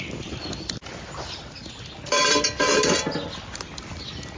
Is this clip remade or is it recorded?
recorded